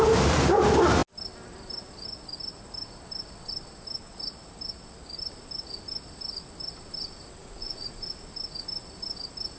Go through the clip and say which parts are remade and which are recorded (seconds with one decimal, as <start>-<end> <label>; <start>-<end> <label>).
0.0-7.4 recorded; 7.4-8.1 remade; 8.1-9.6 recorded

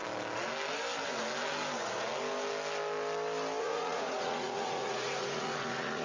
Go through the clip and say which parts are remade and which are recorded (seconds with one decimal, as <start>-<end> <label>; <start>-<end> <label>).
0.0-3.6 recorded; 3.6-6.0 remade

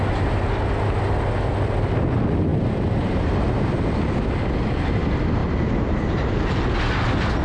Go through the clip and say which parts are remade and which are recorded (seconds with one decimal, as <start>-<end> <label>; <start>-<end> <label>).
0.0-2.5 recorded; 2.5-3.7 remade; 3.7-5.4 recorded; 5.4-6.6 remade; 6.6-7.4 recorded